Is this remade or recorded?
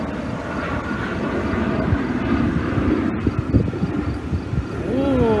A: recorded